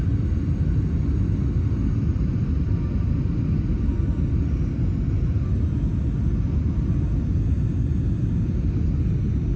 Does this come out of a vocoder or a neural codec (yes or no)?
no